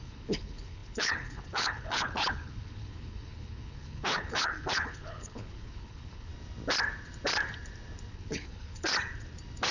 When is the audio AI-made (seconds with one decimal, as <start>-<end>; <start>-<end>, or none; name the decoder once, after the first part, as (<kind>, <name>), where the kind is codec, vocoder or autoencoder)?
0.0-6.3 (codec, HILCodec); 8.1-8.9